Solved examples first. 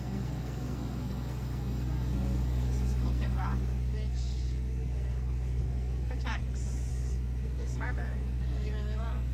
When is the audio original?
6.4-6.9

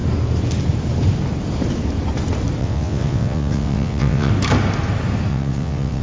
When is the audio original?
0.0-2.6; 4.3-5.3

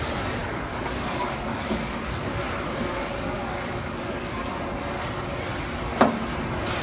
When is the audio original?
0.0-0.4; 4.5-6.8

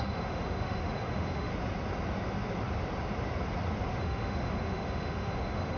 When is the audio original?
1.5-4.0